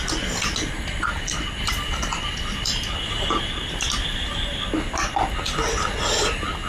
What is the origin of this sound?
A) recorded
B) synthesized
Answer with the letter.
A